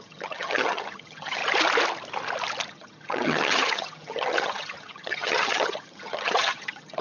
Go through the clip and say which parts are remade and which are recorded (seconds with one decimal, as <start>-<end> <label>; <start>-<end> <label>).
0.0-1.4 remade; 1.4-2.7 recorded; 2.7-7.0 remade